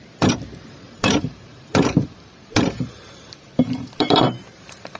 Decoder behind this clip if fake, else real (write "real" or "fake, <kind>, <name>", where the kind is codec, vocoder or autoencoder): fake, vocoder, BigVGAN v2